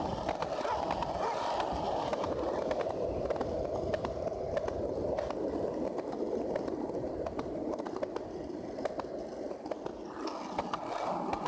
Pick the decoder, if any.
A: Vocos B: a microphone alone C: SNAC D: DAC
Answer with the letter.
B